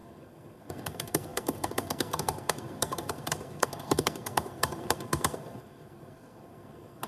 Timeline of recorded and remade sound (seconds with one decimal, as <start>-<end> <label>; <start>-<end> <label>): 0.0-7.1 remade